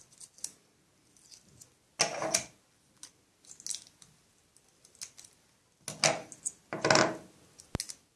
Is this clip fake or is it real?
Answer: real